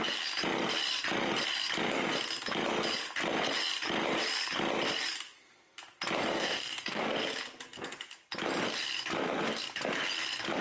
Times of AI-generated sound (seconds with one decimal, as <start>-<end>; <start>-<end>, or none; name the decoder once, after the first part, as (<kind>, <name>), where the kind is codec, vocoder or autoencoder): 6.3-7.0 (codec, DAC)